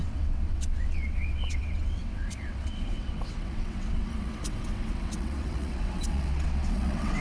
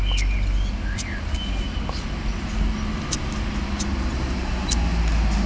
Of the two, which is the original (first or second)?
second